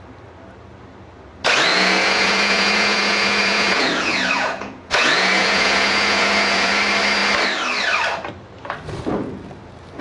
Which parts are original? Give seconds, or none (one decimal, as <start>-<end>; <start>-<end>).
0.0-1.7; 6.7-10.0